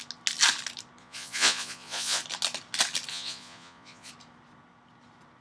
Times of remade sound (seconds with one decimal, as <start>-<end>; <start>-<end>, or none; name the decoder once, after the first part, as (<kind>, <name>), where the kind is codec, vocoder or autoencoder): 1.0-2.2 (vocoder, Vocos); 3.1-4.1